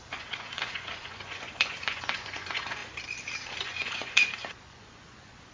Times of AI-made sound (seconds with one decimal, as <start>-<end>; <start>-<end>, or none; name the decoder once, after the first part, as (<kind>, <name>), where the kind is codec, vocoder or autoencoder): 0.0-2.8 (vocoder, Vocos); 3.6-5.5